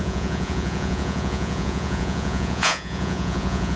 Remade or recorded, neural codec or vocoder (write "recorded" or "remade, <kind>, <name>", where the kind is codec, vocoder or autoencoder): remade, vocoder, Vocos